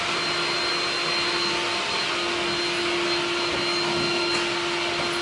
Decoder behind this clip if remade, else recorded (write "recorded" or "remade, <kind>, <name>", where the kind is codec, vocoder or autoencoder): recorded